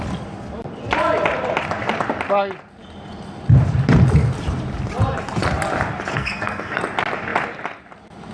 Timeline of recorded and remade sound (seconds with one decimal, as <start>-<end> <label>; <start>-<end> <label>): 0.0-6.1 recorded; 6.1-6.8 remade; 6.8-8.3 recorded